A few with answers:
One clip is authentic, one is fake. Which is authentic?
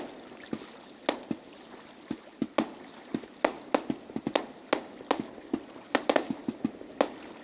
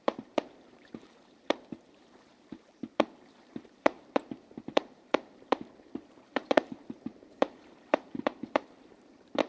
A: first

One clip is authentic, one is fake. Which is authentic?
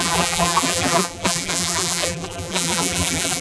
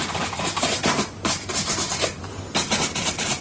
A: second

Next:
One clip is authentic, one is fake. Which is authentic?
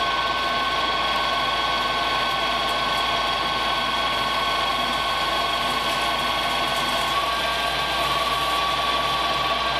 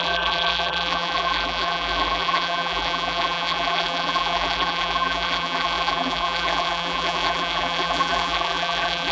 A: first